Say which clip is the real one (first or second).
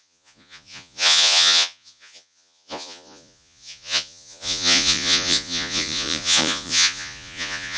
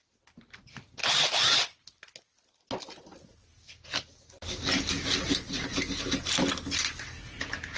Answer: second